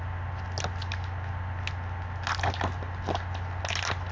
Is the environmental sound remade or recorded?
recorded